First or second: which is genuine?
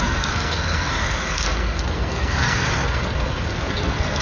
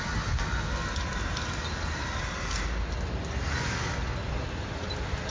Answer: second